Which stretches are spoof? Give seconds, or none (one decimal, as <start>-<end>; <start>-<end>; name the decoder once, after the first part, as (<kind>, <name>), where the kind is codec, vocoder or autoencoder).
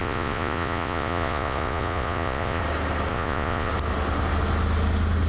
0.0-2.6 (vocoder, Vocos); 3.1-3.7